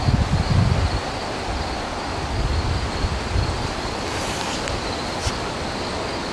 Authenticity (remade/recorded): recorded